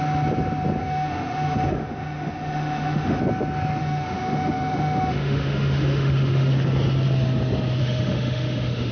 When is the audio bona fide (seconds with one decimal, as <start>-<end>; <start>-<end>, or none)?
0.0-0.8; 3.2-3.8; 6.5-7.8

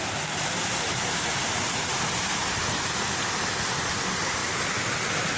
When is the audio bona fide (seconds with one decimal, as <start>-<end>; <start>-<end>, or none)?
0.0-5.4